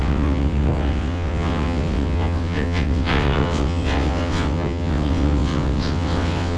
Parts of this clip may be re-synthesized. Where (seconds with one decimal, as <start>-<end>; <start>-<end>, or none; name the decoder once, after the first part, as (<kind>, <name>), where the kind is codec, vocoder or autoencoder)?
0.0-6.6 (vocoder, WaveNeXt)